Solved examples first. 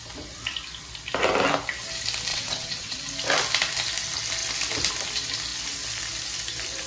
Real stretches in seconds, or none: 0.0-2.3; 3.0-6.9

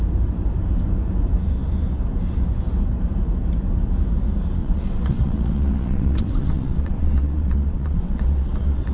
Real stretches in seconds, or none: 0.0-4.6

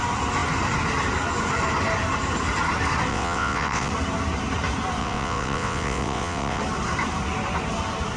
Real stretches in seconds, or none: 0.0-3.1; 3.9-5.0; 6.6-8.2

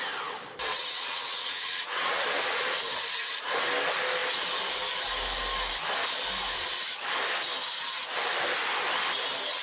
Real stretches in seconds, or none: 0.0-0.7; 2.2-9.6

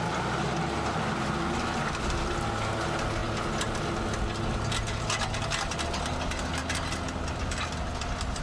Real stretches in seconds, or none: 0.0-8.4

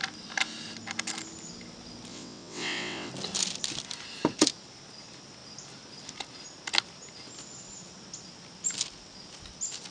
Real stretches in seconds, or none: 0.0-2.1; 3.1-9.9